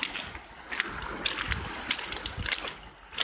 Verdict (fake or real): real